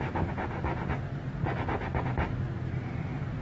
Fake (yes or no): no